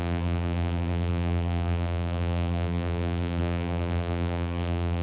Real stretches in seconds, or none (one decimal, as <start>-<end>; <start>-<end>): none